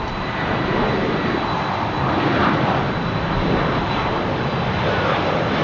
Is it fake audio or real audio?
real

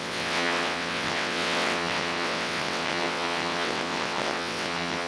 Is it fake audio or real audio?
fake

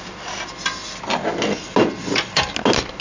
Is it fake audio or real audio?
real